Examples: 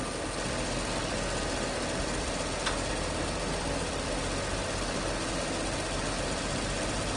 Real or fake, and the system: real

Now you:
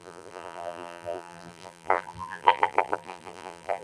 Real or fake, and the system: fake, vocoder, BigVGAN v2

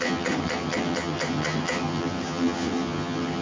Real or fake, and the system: fake, vocoder, HiFi-GAN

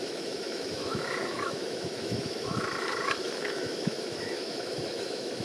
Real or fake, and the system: fake, autoencoder, DAC-VAE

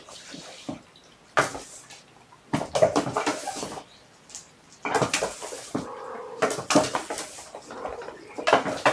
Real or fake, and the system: real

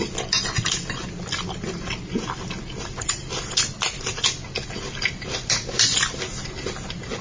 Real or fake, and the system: real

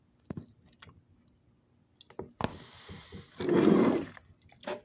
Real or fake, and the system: real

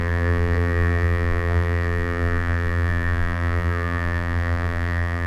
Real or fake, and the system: fake, vocoder, BigVGAN v2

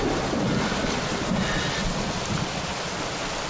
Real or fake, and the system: real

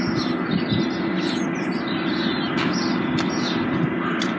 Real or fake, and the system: real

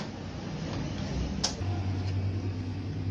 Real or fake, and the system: real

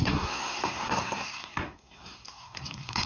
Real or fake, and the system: fake, codec, SNAC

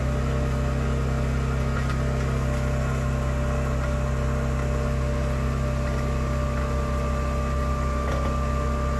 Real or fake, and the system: real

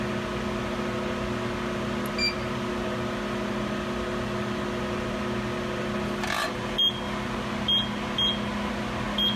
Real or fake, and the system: real